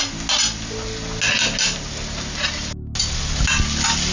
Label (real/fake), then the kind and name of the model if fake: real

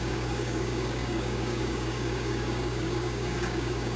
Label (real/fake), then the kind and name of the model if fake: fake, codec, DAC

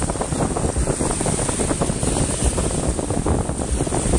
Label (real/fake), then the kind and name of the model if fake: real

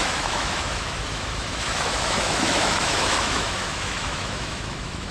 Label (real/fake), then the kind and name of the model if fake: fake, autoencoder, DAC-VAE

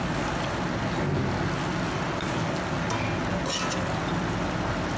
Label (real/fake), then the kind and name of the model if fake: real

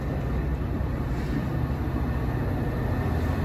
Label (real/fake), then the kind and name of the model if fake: real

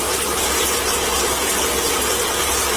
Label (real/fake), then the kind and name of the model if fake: real